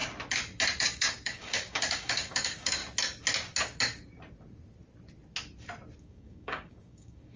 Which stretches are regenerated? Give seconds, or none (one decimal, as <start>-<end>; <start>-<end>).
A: 0.8-2.8; 6.0-7.4